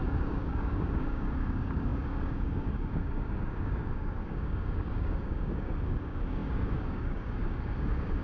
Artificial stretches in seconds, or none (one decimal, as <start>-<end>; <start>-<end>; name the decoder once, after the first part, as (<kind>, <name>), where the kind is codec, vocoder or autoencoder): 0.0-8.2 (codec, DAC)